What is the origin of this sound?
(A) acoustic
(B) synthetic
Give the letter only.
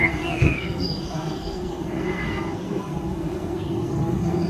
B